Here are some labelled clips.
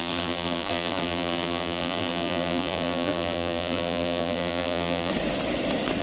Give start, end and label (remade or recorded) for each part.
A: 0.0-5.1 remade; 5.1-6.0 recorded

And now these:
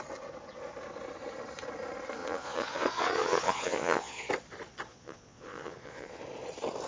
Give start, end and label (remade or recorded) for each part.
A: 0.0-2.2 recorded; 2.2-4.3 remade; 4.3-4.9 recorded; 4.9-6.2 remade; 6.2-6.9 recorded

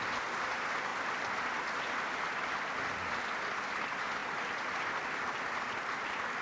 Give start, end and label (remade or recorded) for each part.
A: 0.0-6.4 recorded

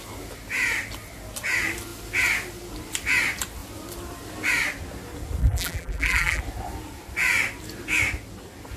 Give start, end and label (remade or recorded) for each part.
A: 0.0-5.4 recorded; 5.4-6.4 remade; 6.4-8.8 recorded